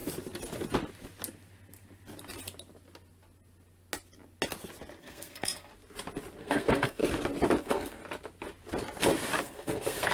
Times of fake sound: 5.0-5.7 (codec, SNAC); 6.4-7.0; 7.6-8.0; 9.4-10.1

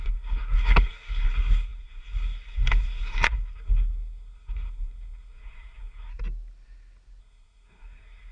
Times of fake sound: 0.0-6.1 (codec, SNAC); 7.2-8.3

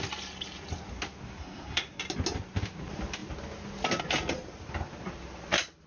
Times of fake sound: 1.4-2.0 (codec, SNAC)

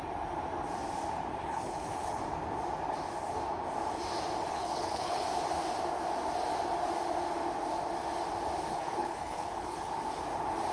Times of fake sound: 1.4-2.2 (codec, HILCodec); 4.5-5.2; 8.7-9.9

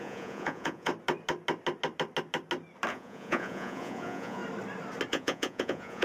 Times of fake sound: 0.0-0.9 (vocoder, Vocos); 2.9-4.4; 5.1-6.0

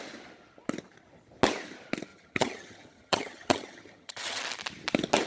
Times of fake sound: 2.1-4.4 (vocoder, HiFi-GAN)

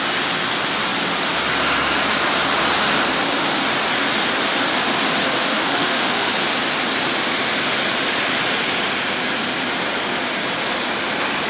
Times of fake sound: 5.4-6.3 (autoencoder, DAC-VAE)

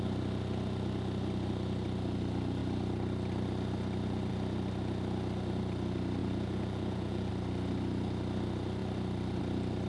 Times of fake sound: 6.2-7.3 (vocoder, Vocos)